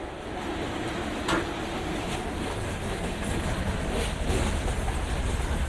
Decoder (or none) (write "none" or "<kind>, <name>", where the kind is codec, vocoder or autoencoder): none